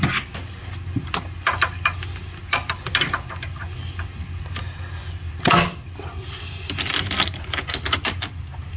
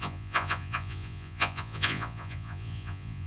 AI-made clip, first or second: second